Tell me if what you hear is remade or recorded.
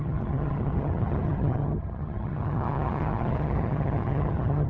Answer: remade